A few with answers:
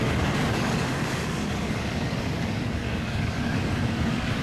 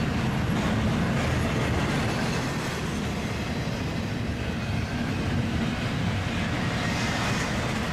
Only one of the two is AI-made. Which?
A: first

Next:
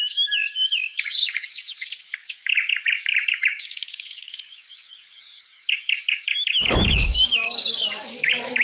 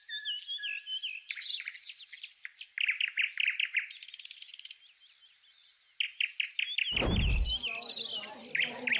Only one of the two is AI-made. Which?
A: first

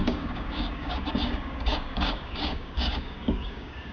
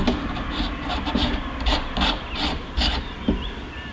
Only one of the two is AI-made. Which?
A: first